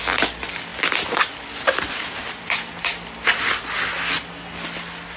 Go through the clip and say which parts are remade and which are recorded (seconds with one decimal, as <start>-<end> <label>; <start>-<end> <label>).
0.0-5.2 recorded